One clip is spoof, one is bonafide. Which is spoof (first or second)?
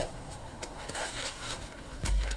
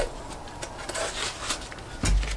first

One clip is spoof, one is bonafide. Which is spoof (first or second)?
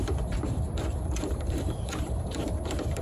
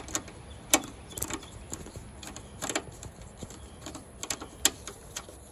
first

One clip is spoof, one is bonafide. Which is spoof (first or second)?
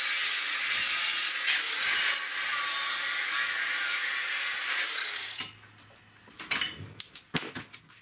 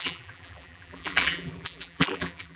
second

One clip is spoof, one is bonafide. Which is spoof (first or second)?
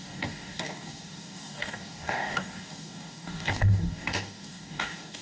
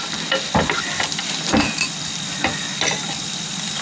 first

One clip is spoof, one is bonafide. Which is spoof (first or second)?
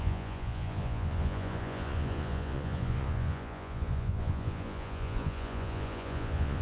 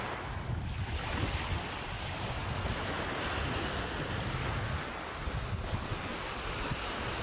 first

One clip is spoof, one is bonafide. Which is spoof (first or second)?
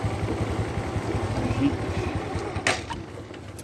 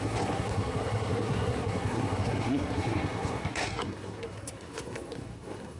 second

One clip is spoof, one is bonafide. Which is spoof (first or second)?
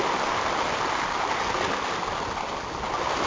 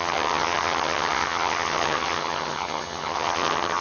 second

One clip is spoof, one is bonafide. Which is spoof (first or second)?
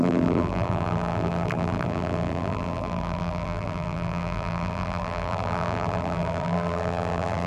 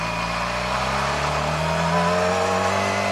first